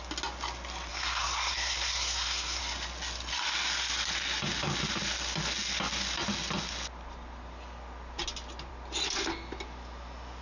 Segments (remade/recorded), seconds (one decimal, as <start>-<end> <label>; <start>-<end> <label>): 0.0-0.9 recorded; 0.9-2.6 remade; 2.6-10.4 recorded